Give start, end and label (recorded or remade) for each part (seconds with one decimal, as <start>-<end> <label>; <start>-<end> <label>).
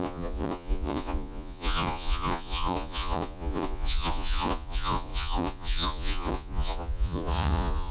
0.0-7.9 remade